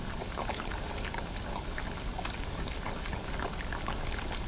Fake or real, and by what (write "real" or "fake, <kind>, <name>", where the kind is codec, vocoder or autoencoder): real